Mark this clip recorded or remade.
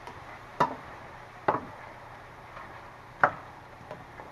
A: remade